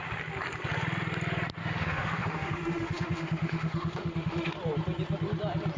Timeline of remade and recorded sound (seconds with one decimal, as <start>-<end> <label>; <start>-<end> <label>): 0.0-1.6 recorded; 1.6-4.5 remade; 4.5-5.8 recorded